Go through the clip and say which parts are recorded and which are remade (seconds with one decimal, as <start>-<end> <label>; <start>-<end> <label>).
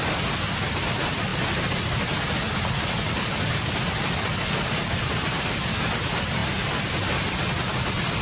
0.0-8.2 recorded